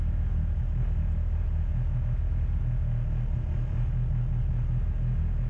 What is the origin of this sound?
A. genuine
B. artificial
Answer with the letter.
A